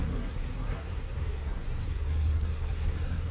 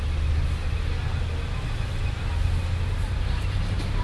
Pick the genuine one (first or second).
second